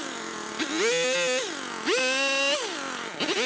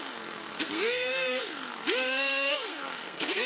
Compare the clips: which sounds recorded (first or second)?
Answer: first